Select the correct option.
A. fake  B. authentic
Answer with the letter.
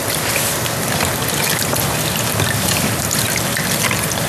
B